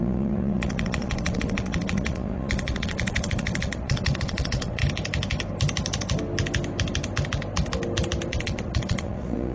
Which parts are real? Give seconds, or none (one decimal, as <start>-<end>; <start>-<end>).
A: 4.8-8.3